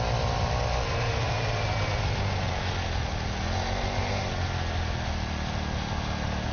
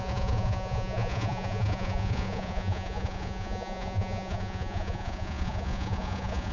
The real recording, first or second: first